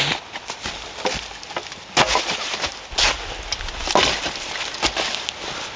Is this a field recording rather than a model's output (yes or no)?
yes